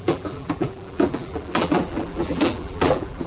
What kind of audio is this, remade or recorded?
remade